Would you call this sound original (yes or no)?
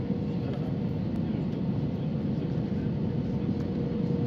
yes